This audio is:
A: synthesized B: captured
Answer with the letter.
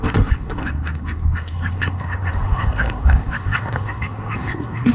A